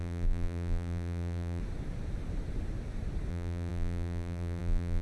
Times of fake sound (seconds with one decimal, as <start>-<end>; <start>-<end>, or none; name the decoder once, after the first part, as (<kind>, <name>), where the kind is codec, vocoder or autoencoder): 0.0-1.6 (vocoder, BigVGAN v2); 3.3-5.0